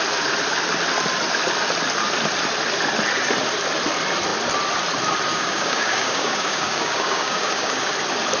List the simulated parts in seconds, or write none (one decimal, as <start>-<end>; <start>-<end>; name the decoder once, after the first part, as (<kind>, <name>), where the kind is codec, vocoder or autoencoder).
5.3-7.9 (codec, DAC)